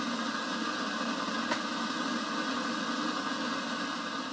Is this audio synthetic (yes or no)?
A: no